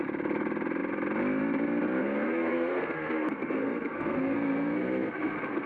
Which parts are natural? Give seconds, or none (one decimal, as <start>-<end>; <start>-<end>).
0.0-2.0